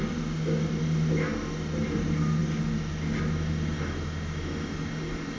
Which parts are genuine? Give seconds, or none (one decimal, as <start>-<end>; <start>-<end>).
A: 0.0-5.4

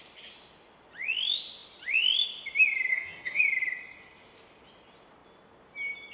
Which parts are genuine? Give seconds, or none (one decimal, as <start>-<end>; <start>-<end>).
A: 0.0-2.9; 3.4-6.1

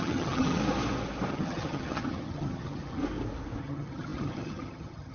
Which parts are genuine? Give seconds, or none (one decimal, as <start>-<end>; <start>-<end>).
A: 0.6-1.3; 3.0-3.6

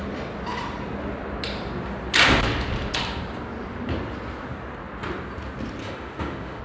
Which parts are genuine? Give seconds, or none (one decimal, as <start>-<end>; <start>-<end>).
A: 0.0-5.8

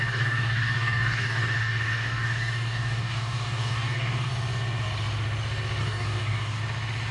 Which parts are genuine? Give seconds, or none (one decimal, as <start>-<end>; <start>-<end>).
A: 4.3-5.8; 6.6-7.1

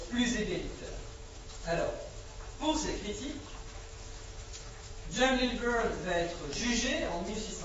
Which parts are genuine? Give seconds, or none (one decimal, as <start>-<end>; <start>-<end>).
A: none